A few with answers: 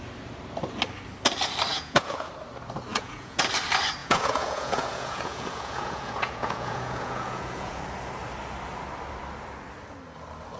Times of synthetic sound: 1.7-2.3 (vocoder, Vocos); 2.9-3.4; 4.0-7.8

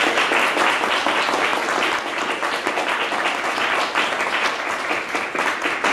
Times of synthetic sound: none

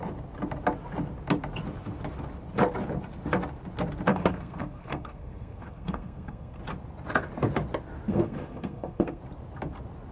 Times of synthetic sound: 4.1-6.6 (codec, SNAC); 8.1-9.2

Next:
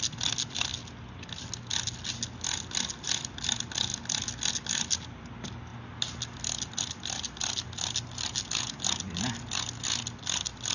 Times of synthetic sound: none

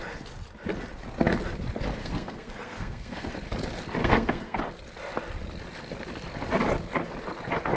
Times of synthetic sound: 2.0-3.3 (codec, SNAC); 4.0-4.6

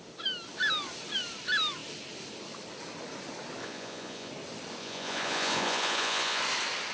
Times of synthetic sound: 3.6-4.3 (vocoder, Vocos); 4.8-6.4